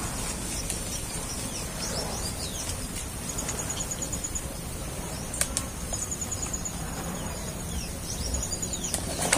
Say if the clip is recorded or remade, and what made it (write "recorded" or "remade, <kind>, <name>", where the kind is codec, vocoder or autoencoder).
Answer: remade, vocoder, BigVGAN v2